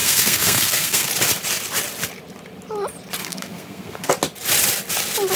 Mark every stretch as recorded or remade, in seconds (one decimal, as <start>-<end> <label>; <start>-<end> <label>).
0.0-1.1 remade; 1.1-3.2 recorded; 3.2-4.1 remade; 4.1-5.4 recorded